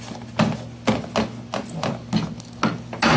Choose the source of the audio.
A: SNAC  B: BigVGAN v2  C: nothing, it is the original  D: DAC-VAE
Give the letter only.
C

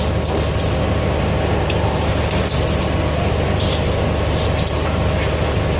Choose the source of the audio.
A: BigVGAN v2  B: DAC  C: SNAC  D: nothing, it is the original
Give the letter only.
A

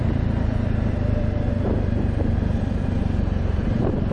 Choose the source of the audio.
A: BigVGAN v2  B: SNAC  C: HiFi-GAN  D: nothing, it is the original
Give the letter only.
A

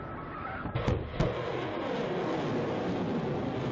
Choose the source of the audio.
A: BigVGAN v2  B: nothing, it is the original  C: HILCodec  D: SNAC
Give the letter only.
B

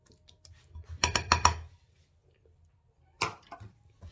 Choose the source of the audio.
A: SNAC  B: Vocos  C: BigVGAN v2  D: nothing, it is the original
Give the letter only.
C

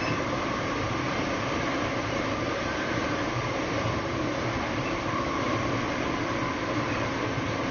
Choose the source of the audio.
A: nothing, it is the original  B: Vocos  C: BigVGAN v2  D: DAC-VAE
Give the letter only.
C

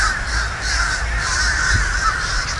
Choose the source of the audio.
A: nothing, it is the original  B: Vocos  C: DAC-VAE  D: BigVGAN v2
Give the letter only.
D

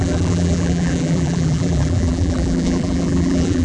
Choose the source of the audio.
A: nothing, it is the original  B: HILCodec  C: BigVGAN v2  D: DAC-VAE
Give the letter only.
C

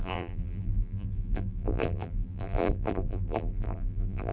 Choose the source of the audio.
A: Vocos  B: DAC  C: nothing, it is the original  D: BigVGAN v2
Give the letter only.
D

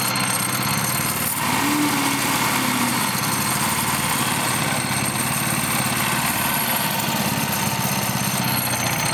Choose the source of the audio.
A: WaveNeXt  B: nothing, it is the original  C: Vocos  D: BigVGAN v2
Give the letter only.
B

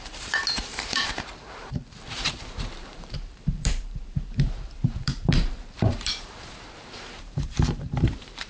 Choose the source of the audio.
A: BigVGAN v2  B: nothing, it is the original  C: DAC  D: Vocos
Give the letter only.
A